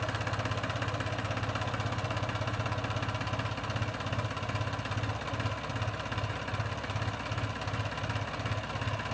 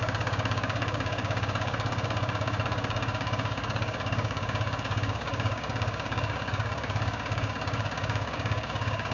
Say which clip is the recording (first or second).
first